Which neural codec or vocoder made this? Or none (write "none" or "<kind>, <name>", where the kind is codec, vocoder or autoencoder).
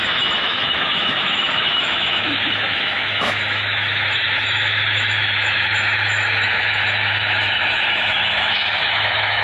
autoencoder, DAC-VAE